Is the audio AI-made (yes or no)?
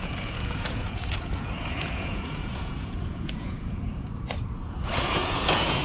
yes